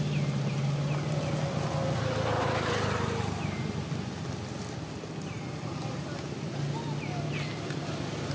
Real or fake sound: real